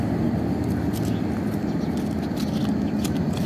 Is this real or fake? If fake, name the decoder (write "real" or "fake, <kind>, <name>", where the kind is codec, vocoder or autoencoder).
real